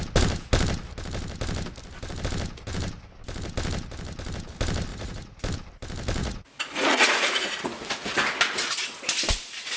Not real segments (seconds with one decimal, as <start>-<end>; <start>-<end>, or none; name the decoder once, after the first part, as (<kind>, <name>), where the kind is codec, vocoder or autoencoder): 4.9-5.4 (vocoder, Vocos); 6.2-7.7